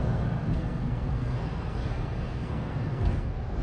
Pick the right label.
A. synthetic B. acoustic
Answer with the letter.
A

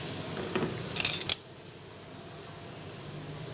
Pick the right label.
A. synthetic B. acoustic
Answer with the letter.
B